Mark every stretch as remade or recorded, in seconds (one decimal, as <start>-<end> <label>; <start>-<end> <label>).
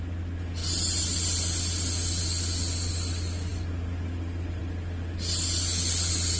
0.0-6.4 recorded